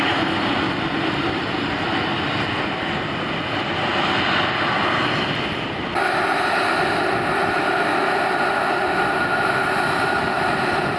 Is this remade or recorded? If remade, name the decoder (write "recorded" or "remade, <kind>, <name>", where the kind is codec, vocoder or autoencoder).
recorded